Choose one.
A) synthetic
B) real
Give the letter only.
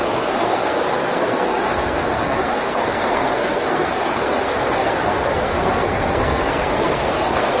A